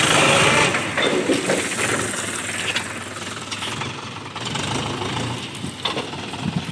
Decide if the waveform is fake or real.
real